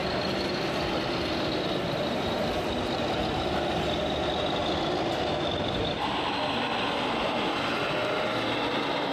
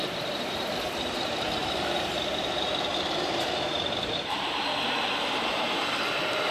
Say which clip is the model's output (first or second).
second